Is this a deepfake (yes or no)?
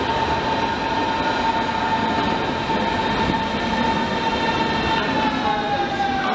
no